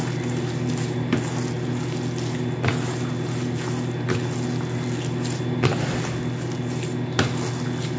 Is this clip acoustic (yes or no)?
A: yes